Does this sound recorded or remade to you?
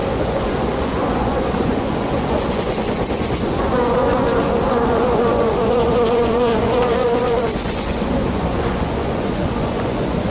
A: remade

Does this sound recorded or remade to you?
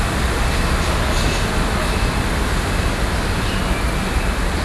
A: recorded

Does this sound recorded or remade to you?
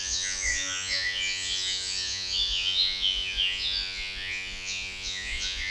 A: remade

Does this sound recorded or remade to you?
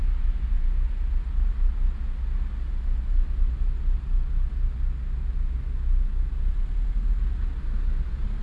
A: recorded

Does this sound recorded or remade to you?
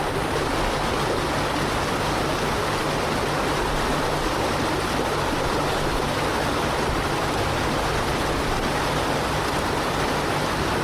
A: recorded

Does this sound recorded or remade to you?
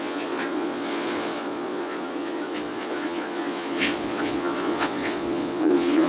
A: remade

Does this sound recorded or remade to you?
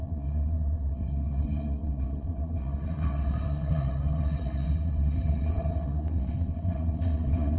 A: remade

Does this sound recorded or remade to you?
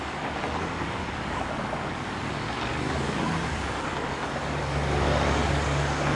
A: remade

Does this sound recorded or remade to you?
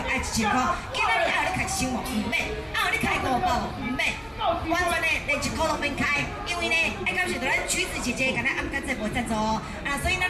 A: recorded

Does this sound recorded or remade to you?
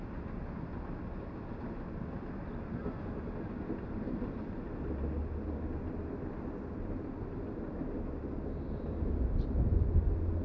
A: recorded